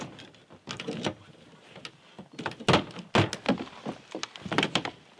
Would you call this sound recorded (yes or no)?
yes